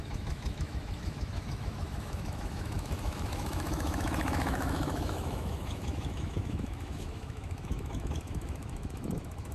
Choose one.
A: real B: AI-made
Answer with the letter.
B